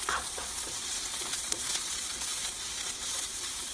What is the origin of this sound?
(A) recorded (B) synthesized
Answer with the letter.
B